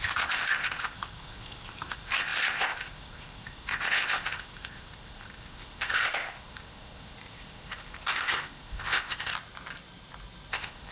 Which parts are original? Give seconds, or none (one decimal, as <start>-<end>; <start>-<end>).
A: 9.3-10.5